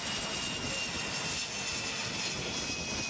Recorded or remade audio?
recorded